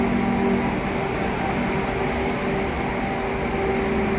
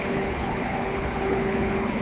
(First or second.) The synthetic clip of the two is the second